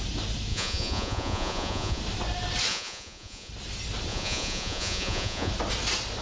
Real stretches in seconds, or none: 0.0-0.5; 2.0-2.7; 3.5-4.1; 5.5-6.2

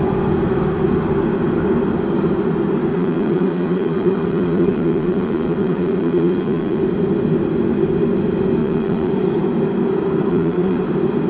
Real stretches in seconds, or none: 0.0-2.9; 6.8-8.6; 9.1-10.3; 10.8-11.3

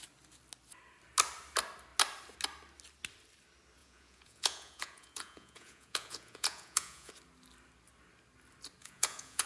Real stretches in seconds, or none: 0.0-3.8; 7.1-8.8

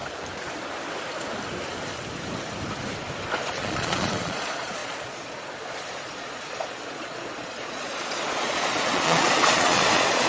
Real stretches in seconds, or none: 0.0-3.4

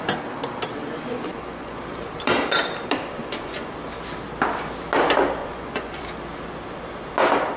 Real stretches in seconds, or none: 0.0-1.3; 1.8-3.2; 3.7-5.4; 6.0-7.6